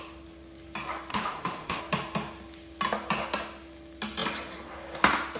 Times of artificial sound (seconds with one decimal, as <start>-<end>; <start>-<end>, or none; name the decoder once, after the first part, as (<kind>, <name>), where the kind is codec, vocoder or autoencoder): 1.1-1.8 (autoencoder, DAC-VAE)